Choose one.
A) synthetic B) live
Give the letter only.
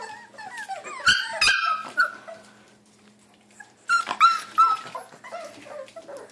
B